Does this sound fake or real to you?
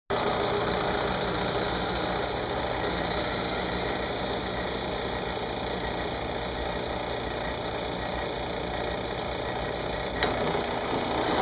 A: real